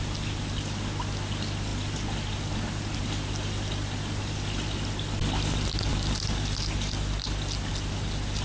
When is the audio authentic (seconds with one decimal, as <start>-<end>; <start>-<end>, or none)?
0.0-8.4